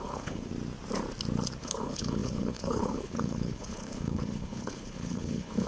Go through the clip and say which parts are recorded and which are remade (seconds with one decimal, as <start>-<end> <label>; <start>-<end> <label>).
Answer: 0.0-0.5 remade; 0.5-1.6 recorded; 1.6-5.7 remade